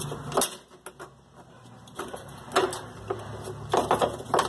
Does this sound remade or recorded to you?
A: recorded